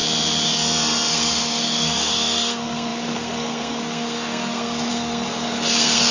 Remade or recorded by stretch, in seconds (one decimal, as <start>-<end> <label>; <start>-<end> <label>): 0.0-1.1 recorded; 1.1-6.1 remade